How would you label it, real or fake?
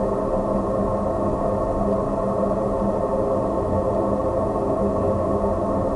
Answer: real